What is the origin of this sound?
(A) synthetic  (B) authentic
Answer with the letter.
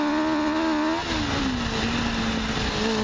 B